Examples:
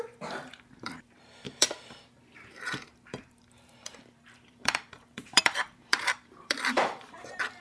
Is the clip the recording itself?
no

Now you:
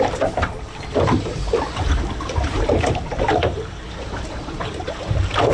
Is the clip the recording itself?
no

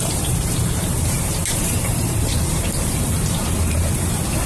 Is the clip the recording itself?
no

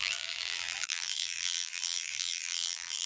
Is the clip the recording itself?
no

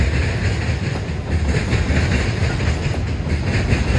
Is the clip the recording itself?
yes